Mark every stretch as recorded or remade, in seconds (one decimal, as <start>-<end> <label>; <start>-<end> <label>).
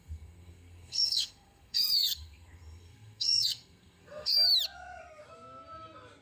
0.0-4.5 remade; 4.5-6.2 recorded